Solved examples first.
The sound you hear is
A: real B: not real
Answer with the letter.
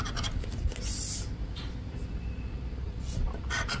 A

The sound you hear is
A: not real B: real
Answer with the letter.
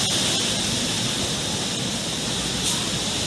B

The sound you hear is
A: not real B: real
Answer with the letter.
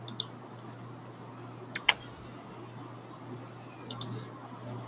B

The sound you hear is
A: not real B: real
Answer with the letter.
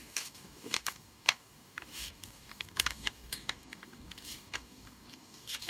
A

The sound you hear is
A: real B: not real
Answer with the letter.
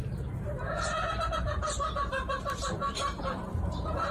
B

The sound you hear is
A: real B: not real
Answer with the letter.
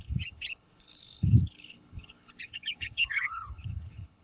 B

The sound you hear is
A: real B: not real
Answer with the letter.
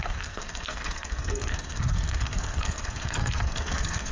B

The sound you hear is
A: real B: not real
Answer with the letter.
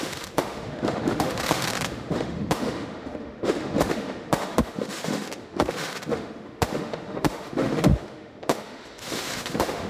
B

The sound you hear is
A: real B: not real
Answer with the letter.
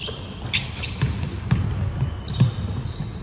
A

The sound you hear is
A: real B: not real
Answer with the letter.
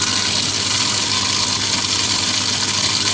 A